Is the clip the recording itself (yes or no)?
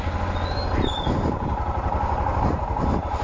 yes